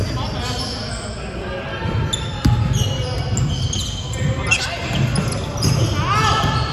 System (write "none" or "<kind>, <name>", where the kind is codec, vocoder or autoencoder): none